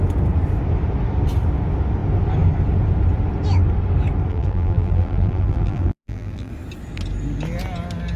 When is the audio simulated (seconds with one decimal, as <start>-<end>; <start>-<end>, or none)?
4.3-6.5